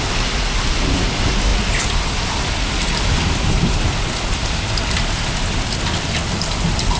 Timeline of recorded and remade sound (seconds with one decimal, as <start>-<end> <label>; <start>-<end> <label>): 0.0-7.0 recorded